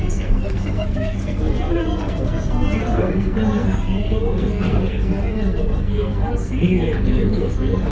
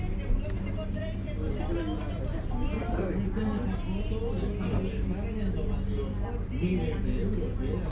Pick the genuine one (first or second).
second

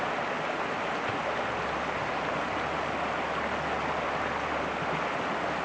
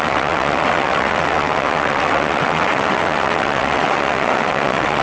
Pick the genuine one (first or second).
first